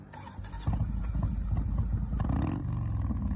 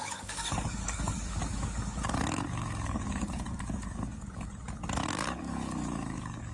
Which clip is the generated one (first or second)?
second